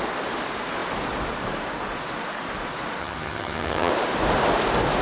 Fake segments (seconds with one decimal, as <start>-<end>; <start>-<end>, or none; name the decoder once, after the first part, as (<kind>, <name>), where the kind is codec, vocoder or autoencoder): 3.0-3.9 (vocoder, HiFi-GAN)